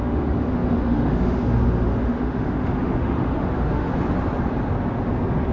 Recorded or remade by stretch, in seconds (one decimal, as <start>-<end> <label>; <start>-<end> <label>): 0.0-3.9 remade; 3.9-5.5 recorded